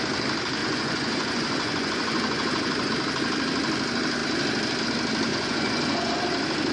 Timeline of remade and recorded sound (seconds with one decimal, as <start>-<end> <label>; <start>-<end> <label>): 0.0-0.6 recorded; 0.6-2.9 remade; 2.9-5.3 recorded; 5.3-6.1 remade; 6.1-6.7 recorded